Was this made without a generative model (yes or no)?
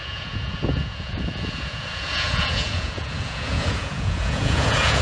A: no